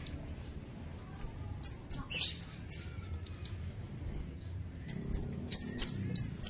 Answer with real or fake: real